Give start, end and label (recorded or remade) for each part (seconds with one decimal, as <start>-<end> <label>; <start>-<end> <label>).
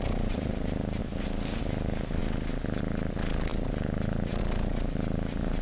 0.0-5.6 recorded